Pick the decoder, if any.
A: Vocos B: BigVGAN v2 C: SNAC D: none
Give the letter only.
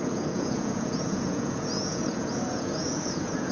A